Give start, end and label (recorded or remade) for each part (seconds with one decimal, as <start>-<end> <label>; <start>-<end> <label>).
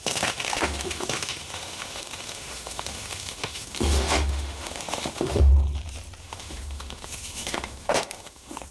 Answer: 0.0-5.5 remade; 5.5-6.2 recorded; 6.2-8.7 remade